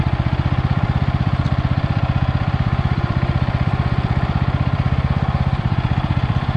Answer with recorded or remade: remade